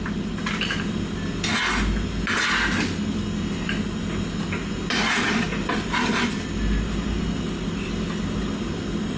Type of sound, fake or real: real